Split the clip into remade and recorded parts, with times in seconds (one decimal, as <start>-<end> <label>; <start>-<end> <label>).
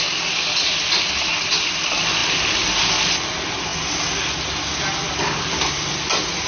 0.0-6.5 recorded